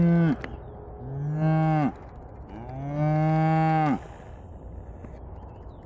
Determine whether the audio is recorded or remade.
recorded